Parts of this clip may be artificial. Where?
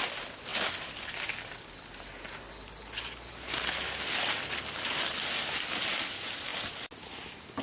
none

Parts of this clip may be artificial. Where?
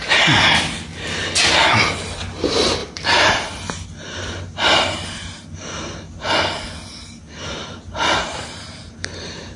2.8-3.5 (vocoder, BigVGAN v2); 7.6-9.6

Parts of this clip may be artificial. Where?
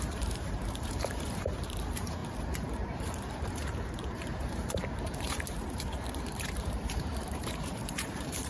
0.0-8.5 (vocoder, BigVGAN v2)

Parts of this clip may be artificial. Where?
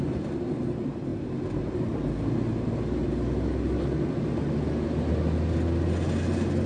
none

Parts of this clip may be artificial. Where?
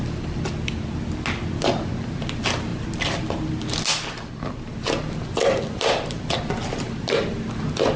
none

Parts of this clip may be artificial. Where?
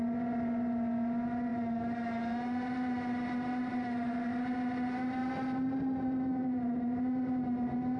none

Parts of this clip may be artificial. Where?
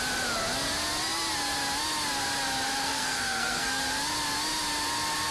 2.8-3.8 (codec, SNAC)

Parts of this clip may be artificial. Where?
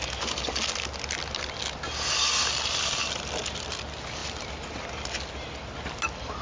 none